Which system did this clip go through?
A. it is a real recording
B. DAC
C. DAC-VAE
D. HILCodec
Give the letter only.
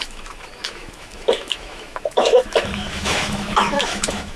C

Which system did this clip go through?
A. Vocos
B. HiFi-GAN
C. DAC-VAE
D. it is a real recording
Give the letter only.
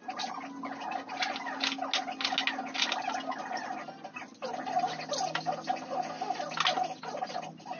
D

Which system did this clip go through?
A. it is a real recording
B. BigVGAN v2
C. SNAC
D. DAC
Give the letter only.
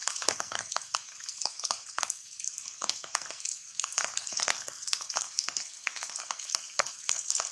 C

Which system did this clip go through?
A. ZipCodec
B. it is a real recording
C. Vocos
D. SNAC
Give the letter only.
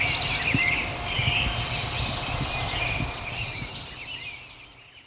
B